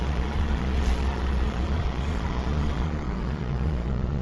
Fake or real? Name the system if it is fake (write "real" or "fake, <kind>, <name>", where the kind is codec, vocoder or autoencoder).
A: fake, vocoder, Vocos